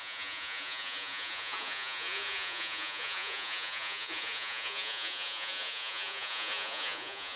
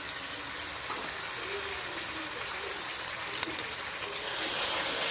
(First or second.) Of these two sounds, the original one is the second